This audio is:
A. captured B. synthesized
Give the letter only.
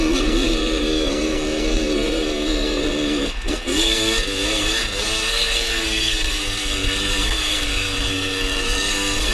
B